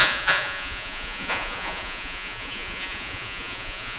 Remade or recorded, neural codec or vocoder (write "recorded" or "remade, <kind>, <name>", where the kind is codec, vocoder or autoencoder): remade, vocoder, Vocos